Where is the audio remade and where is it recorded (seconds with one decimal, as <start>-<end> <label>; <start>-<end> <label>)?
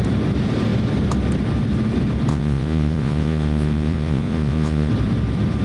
0.0-2.3 recorded; 2.3-4.9 remade; 4.9-5.6 recorded